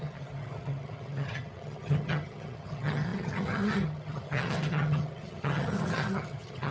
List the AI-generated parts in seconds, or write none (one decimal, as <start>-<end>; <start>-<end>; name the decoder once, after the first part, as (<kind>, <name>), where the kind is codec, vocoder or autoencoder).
0.0-6.7 (vocoder, HiFi-GAN)